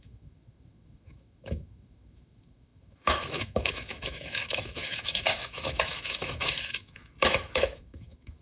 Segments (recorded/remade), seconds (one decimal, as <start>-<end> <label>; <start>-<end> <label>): 0.0-8.4 remade